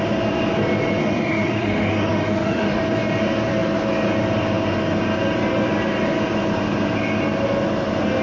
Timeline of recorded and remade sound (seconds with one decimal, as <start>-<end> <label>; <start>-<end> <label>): 0.0-1.0 recorded; 1.0-2.8 remade; 2.8-8.2 recorded